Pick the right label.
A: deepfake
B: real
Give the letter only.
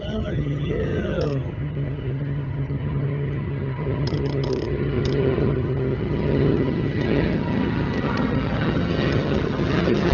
A